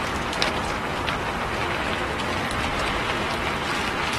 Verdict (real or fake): real